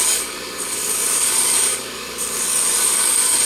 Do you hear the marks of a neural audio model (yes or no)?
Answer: yes